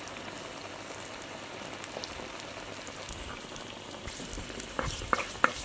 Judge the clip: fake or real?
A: real